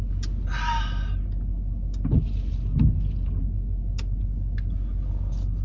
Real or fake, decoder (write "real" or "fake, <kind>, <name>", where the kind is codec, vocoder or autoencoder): real